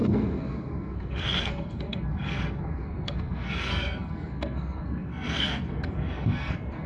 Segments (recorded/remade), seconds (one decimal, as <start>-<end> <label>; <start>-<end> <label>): 0.0-6.9 remade